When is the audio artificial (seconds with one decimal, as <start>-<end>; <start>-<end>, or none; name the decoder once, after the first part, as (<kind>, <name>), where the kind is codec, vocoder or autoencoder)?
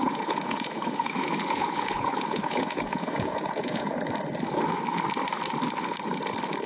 0.0-4.0 (vocoder, Vocos)